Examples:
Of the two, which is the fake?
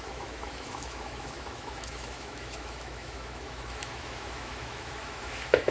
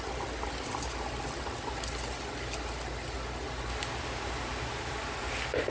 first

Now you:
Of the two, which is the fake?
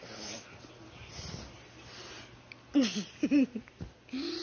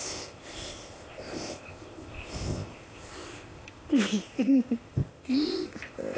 second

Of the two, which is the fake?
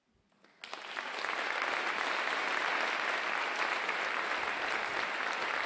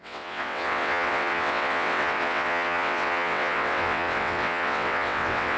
second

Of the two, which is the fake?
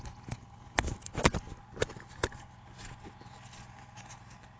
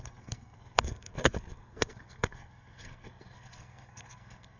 second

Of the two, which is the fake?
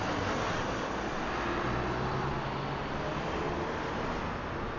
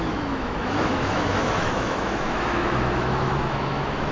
second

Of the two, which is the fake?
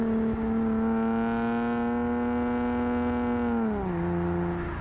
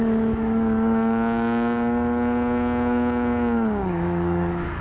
second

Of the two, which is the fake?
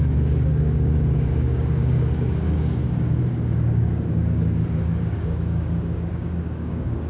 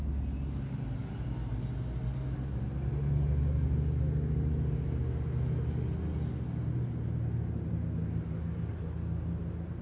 first